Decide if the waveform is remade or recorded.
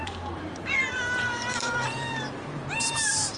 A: remade